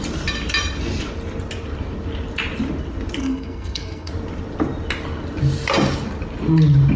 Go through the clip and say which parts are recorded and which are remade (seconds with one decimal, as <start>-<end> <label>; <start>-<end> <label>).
0.0-3.2 recorded; 3.2-4.1 remade; 4.1-7.0 recorded